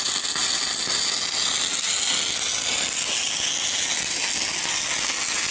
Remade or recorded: recorded